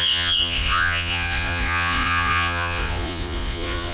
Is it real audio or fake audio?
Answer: fake